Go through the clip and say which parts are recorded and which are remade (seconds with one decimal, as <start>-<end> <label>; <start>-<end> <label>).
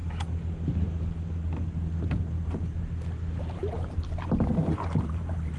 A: 0.0-3.4 recorded; 3.4-5.6 remade